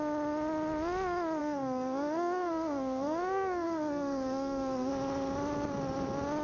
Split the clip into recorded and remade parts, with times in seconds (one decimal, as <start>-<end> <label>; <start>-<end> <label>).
0.0-1.4 recorded; 1.4-4.9 remade; 4.9-6.4 recorded